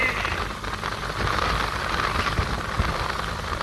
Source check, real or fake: real